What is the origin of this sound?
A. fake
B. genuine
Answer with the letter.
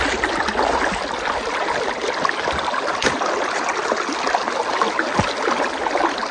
B